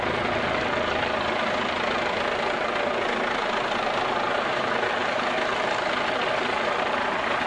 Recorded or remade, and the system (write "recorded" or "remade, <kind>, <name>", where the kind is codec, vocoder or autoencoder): recorded